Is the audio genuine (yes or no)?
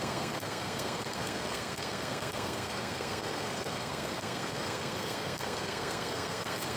no